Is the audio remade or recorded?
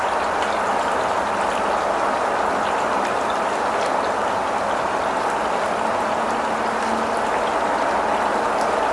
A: recorded